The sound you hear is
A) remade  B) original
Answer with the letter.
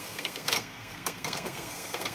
A